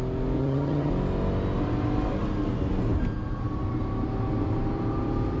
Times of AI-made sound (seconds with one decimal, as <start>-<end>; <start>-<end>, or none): 0.4-0.9